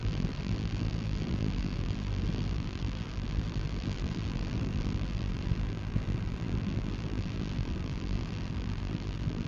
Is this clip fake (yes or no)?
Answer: yes